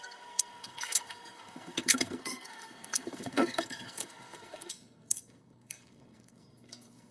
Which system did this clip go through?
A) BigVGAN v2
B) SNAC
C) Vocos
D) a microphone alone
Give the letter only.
B